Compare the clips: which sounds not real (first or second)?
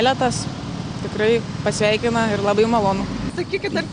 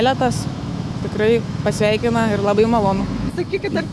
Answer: second